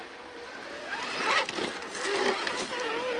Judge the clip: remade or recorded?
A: recorded